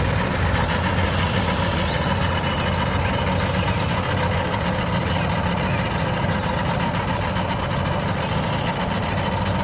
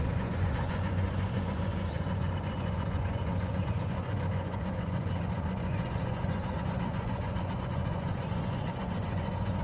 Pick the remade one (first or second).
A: second